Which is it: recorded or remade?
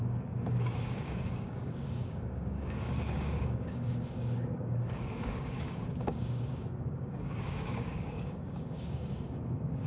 remade